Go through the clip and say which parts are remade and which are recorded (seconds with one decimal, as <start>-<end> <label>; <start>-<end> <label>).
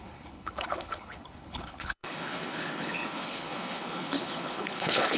0.0-5.2 remade